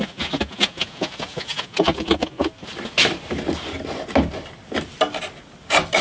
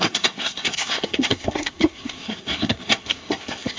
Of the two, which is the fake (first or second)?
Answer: second